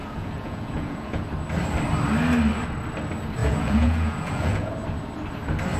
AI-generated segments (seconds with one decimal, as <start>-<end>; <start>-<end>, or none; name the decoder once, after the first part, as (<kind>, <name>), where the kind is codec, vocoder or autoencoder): 0.0-1.2 (vocoder, Vocos); 3.4-4.7